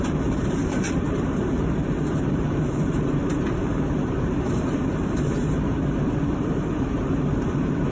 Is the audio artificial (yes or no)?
yes